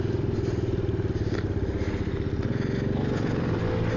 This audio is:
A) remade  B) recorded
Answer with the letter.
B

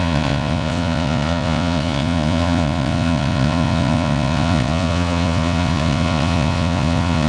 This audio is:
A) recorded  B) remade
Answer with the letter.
B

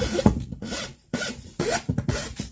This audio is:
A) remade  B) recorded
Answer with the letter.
A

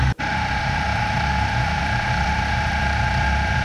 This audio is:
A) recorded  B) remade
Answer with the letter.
B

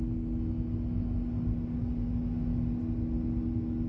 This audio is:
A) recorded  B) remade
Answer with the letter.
A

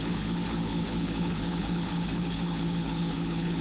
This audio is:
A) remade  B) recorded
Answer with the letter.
A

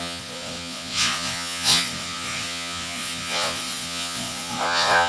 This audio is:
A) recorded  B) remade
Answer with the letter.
B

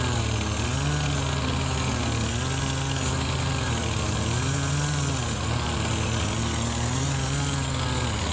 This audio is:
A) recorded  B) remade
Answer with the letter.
A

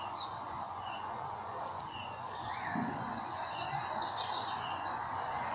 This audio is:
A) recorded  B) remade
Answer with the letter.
B